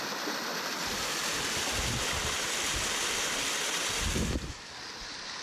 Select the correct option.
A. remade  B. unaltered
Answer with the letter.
B